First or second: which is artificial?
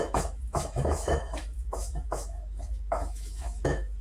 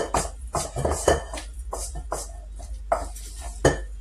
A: first